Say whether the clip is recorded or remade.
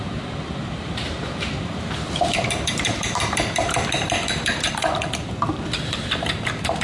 remade